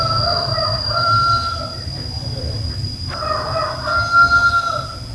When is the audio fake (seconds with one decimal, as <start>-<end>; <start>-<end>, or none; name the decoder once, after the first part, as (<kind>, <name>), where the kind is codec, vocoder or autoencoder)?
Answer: 0.7-2.7 (vocoder, BigVGAN v2)